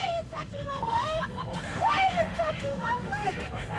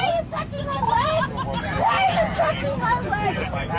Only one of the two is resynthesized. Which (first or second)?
first